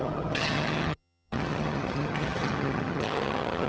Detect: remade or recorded remade